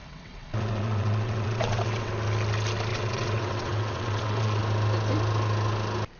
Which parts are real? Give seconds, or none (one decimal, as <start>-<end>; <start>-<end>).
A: 2.1-2.9; 4.6-6.2

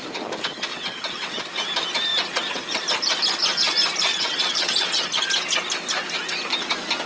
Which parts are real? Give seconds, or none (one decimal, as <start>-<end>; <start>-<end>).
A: 0.0-0.7; 1.4-4.1; 5.0-7.1

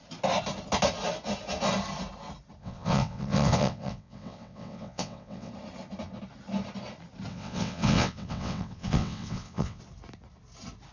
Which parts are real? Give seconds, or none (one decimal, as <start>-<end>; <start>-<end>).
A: 0.0-2.6; 5.5-7.3; 9.8-10.9

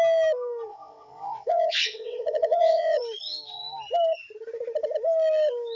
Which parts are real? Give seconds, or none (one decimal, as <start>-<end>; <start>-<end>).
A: 0.0-0.7; 3.0-5.8

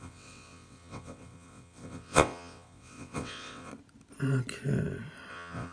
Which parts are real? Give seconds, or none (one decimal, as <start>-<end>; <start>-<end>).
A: 3.7-5.3